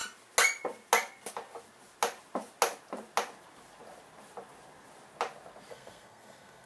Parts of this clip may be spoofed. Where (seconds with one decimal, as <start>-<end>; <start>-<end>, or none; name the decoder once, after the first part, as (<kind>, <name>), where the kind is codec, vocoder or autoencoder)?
5.7-6.7 (codec, SNAC)